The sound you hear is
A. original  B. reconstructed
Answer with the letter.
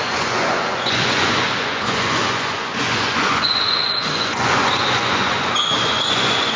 B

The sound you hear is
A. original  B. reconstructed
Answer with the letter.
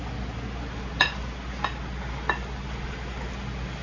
A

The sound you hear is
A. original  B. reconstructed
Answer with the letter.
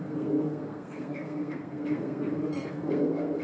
B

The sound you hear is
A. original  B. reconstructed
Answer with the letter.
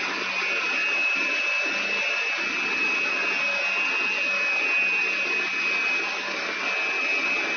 A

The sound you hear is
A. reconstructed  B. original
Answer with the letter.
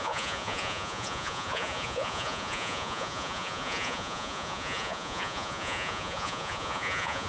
A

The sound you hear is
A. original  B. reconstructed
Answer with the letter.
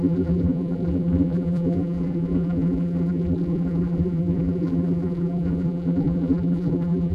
B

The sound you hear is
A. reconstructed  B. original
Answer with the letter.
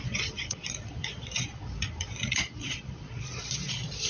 A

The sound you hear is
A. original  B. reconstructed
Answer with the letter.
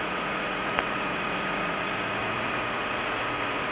B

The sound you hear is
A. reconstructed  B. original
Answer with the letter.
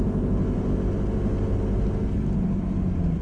B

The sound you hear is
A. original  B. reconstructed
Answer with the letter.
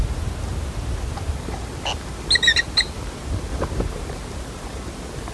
A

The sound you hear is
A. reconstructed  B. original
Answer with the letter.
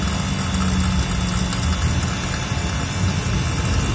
B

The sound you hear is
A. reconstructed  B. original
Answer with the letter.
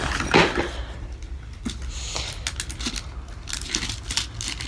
B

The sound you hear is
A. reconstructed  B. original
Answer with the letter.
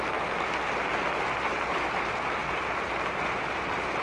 B